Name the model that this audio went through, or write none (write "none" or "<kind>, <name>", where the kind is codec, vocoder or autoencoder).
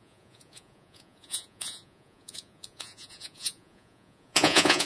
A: vocoder, Vocos